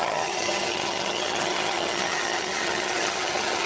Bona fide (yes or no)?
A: no